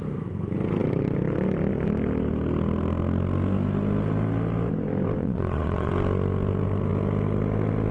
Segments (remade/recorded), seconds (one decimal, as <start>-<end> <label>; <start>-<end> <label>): 0.0-5.2 recorded; 5.2-5.9 remade; 5.9-7.9 recorded